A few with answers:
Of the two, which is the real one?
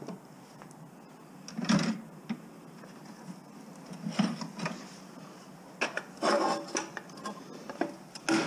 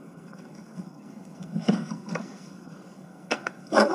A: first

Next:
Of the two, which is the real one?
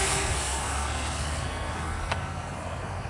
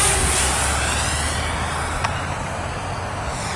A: second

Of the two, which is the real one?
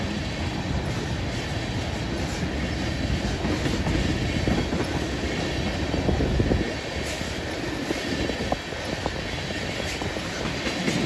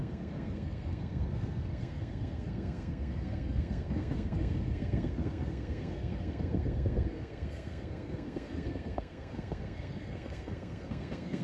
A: first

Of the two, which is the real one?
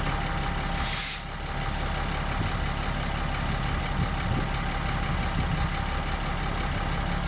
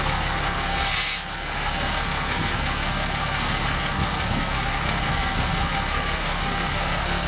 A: first